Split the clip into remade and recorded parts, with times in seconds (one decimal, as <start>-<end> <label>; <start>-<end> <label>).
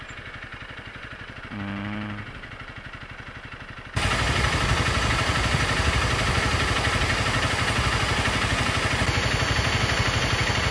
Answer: 0.0-0.5 recorded; 0.5-1.4 remade; 1.4-10.7 recorded